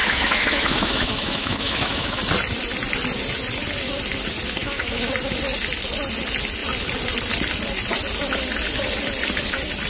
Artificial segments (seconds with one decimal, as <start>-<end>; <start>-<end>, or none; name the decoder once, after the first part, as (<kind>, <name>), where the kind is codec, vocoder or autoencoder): 0.0-2.2 (autoencoder, DAC-VAE); 4.6-5.1